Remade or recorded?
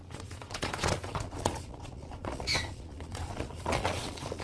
remade